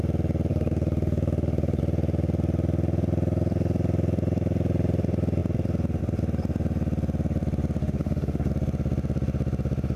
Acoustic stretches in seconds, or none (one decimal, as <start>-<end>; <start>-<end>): 0.0-0.5; 1.8-7.8; 8.5-10.0